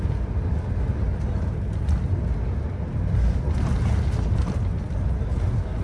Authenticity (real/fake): real